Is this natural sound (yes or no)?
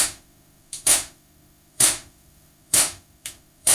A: no